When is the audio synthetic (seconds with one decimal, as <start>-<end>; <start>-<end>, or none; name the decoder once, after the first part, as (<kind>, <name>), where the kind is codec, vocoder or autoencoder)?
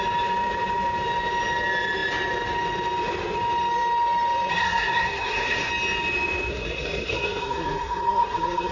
4.5-5.7 (codec, SNAC); 6.5-8.7